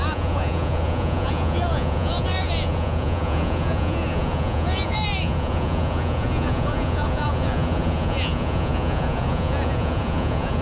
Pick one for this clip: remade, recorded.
remade